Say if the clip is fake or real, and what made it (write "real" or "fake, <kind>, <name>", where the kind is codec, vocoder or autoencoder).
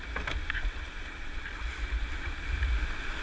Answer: real